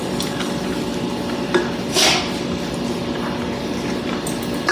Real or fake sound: real